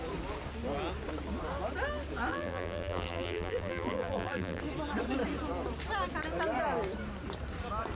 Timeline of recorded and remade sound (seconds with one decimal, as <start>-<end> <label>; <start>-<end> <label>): 0.0-2.3 recorded; 2.3-4.6 remade; 4.6-7.9 recorded